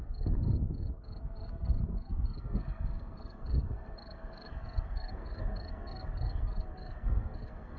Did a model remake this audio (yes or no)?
yes